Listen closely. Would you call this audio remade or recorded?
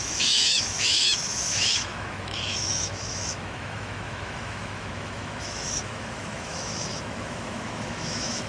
remade